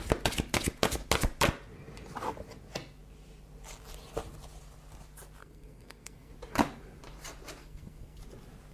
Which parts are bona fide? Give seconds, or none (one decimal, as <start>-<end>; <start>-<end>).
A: 0.0-5.4; 6.3-7.6; 8.2-8.7